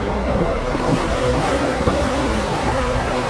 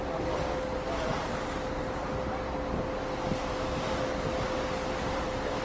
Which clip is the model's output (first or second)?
first